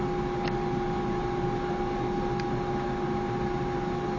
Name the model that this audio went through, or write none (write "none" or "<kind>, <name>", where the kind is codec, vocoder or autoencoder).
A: none